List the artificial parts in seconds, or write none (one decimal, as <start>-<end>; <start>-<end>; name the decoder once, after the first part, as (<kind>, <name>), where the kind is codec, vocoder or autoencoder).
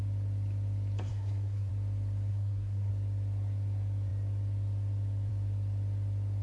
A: 1.1-1.7 (codec, SNAC); 2.3-2.9